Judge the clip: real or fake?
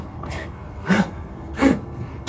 fake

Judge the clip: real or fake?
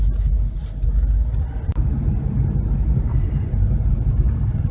real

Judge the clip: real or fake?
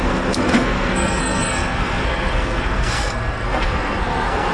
fake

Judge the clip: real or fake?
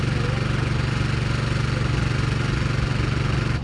real